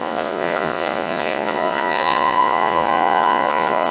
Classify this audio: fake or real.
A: fake